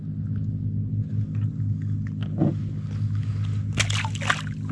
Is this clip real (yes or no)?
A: yes